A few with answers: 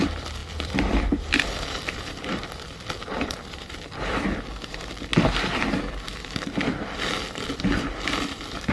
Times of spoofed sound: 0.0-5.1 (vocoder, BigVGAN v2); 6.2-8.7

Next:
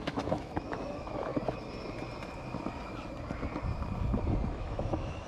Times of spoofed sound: 0.0-1.3 (autoencoder, DAC-VAE); 4.5-5.3

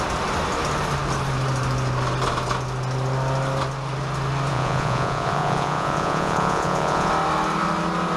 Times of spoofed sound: 4.5-7.1 (vocoder, Vocos)

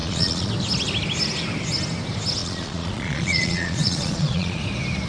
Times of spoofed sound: 0.0-0.5 (vocoder, Vocos); 2.4-4.6

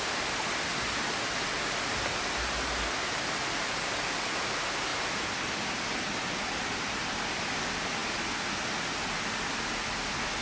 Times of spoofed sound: none

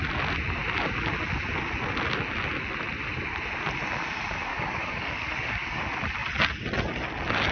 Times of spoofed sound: 4.5-5.8 (codec, DAC)

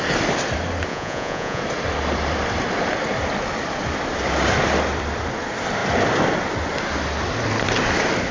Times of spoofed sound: 0.9-1.6 (vocoder, Vocos)